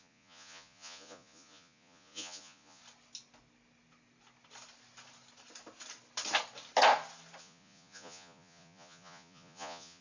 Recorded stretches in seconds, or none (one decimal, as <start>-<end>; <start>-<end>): 2.8-7.4